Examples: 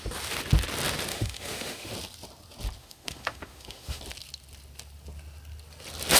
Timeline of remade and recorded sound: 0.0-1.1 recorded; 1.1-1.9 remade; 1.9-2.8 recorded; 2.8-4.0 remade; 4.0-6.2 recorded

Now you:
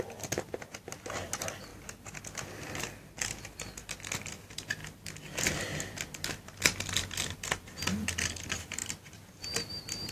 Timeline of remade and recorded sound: 0.0-10.1 recorded